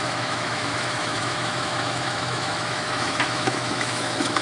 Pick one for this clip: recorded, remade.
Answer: remade